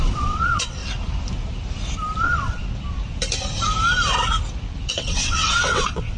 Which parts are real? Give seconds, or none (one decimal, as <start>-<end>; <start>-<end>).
0.8-2.2; 2.6-4.9